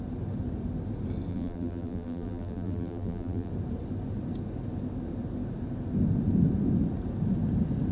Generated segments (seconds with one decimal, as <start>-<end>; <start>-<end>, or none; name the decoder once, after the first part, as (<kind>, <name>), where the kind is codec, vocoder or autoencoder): 1.3-3.5 (vocoder, BigVGAN v2)